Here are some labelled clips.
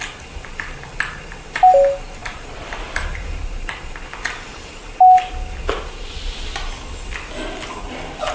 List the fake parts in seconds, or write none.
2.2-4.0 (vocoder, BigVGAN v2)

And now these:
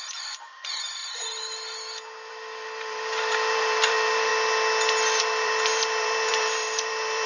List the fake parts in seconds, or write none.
0.0-1.0 (vocoder, BigVGAN v2); 2.3-4.3; 5.2-7.3